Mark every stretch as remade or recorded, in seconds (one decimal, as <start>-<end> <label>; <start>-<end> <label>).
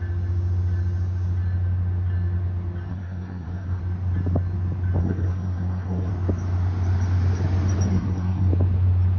0.0-2.9 recorded; 2.9-3.8 remade; 3.8-5.0 recorded; 5.0-6.1 remade; 6.1-7.9 recorded; 7.9-8.5 remade; 8.5-9.2 recorded